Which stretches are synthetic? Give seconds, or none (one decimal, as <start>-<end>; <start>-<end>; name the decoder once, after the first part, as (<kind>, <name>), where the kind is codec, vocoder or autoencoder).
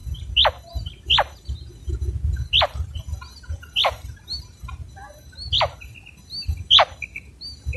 none